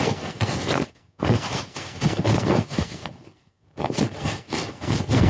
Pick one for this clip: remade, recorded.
remade